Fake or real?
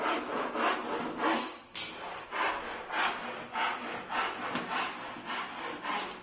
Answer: real